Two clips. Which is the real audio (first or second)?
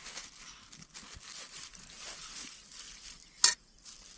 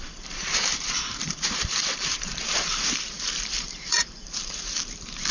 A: first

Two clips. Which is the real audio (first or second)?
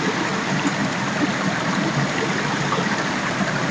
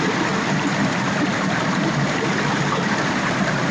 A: first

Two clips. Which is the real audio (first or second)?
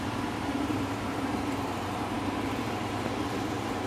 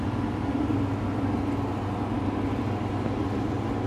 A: second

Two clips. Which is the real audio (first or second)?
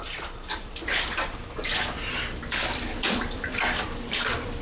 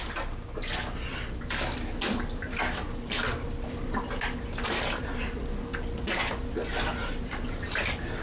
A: second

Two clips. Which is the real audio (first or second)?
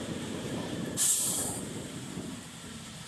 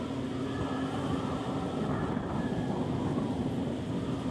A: second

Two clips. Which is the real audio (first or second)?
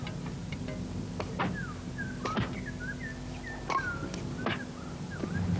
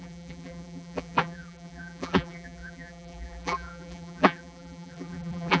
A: first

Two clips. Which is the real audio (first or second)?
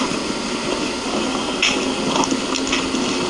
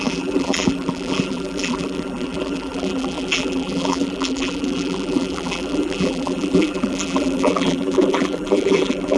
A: first